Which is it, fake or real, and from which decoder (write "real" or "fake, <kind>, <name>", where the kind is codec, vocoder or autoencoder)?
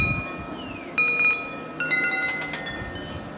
real